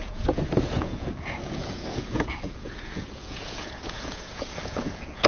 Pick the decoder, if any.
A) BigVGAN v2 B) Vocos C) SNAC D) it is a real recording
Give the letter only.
B